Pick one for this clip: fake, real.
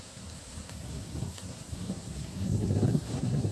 fake